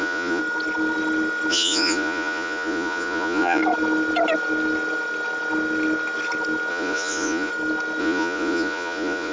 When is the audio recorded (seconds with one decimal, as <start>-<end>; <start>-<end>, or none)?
0.4-1.5; 3.6-6.7; 7.5-8.0

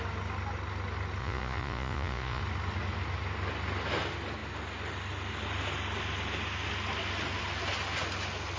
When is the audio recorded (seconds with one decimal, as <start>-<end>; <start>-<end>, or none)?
0.0-1.2; 2.4-8.6

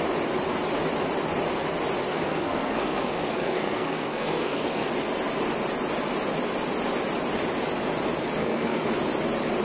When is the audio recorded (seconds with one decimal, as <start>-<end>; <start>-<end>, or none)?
0.0-2.1; 4.9-8.4; 8.9-9.6

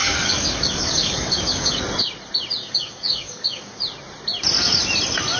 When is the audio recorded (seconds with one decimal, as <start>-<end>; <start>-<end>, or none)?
1.8-2.6; 3.8-5.4

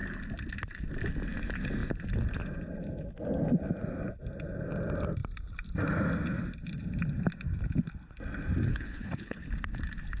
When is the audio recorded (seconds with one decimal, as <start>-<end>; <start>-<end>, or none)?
0.0-8.7; 9.5-10.2